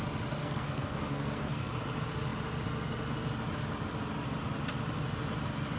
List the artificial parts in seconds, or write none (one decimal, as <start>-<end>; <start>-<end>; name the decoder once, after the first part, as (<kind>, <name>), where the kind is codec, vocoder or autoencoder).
0.4-1.7 (codec, SNAC)